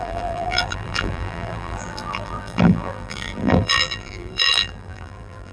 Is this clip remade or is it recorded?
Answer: remade